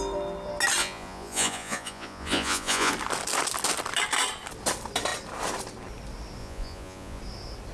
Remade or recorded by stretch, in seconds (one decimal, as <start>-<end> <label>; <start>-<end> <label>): 0.0-0.8 recorded; 0.8-2.9 remade; 2.9-6.4 recorded; 6.4-7.2 remade; 7.2-7.7 recorded